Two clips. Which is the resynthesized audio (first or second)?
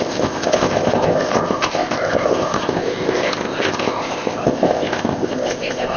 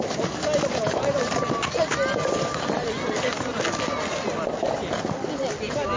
first